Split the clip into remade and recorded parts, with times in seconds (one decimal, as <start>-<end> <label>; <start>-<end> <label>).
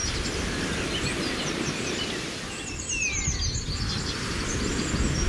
0.0-5.3 recorded